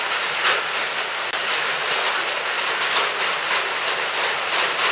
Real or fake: real